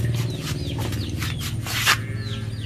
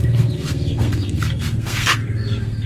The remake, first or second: second